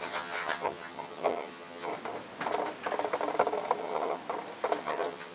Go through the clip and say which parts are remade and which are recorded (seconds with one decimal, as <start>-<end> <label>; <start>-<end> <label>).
0.0-1.9 remade; 1.9-3.8 recorded; 3.8-4.2 remade; 4.2-4.8 recorded; 4.8-5.3 remade